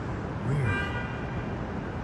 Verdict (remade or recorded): recorded